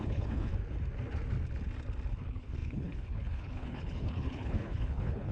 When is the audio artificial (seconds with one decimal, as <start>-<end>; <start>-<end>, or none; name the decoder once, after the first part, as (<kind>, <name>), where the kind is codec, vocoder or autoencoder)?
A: 0.0-0.5 (codec, HILCodec); 2.1-5.3